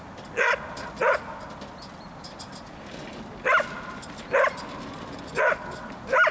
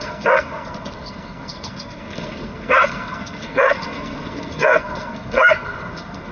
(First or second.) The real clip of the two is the first